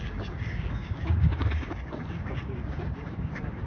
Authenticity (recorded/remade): remade